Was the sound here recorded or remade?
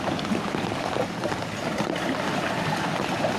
recorded